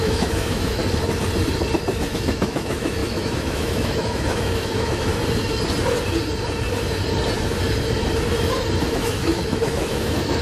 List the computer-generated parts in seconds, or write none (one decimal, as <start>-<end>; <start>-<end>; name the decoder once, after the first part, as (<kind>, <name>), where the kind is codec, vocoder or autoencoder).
0.0-0.8 (autoencoder, DAC-VAE); 2.1-5.1; 8.8-10.4